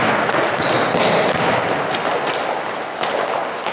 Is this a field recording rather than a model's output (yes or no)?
yes